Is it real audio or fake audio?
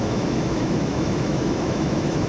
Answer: fake